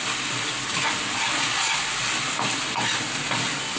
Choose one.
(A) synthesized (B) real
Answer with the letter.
B